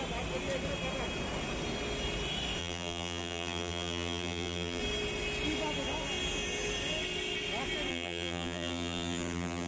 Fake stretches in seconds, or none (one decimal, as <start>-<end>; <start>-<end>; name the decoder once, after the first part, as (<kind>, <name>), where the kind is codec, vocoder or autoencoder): 2.6-4.8 (vocoder, BigVGAN v2); 7.9-9.7